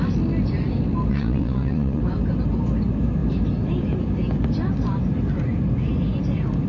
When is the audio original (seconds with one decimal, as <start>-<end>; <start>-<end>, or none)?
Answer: 0.0-1.1; 2.0-6.7